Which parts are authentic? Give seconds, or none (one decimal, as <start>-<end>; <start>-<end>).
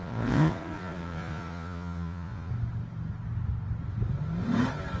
2.5-5.0